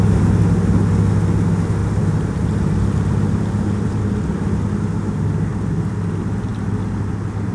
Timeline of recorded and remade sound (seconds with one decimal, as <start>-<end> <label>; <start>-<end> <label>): 0.0-1.8 recorded; 1.8-4.7 remade; 4.7-5.5 recorded; 5.5-6.1 remade; 6.1-7.5 recorded